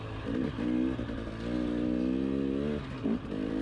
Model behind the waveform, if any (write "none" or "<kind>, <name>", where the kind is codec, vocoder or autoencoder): none